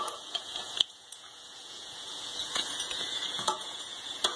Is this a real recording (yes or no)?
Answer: no